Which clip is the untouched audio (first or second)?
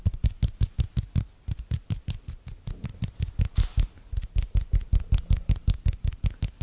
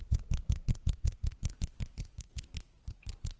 first